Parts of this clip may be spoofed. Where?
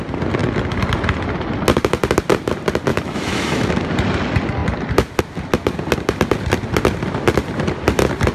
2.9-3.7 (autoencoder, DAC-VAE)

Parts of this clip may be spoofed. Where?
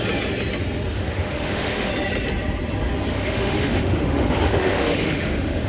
0.9-1.9 (autoencoder, DAC-VAE); 3.1-5.7